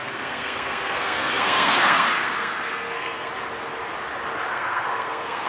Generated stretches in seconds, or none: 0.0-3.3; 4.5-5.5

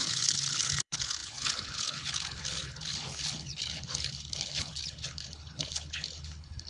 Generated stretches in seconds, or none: 0.0-6.7

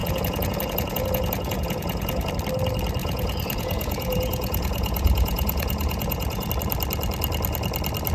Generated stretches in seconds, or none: 0.0-2.3; 3.0-6.5

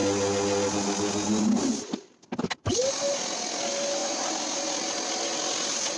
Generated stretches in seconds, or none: none

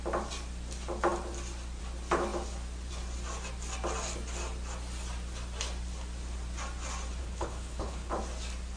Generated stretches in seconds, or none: 7.2-8.1